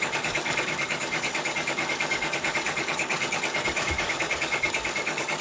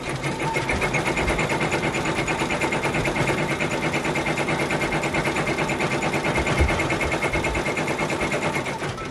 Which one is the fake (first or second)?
first